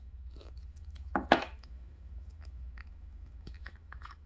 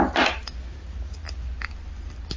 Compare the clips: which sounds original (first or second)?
second